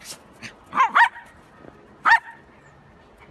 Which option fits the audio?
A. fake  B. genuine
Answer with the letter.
B